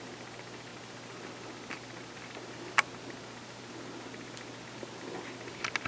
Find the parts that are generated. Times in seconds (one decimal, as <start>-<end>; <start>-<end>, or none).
none